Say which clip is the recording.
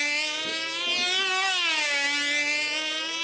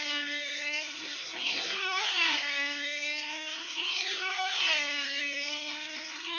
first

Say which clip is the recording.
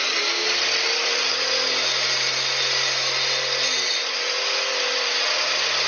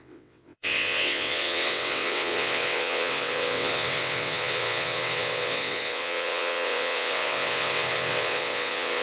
first